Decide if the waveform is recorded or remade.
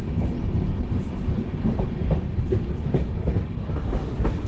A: recorded